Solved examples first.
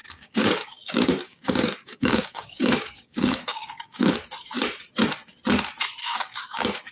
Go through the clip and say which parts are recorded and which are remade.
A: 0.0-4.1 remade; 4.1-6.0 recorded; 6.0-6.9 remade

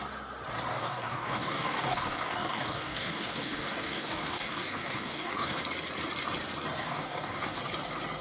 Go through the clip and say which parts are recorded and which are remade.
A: 0.0-0.7 recorded; 0.7-5.6 remade; 5.6-6.8 recorded; 6.8-7.6 remade; 7.6-8.2 recorded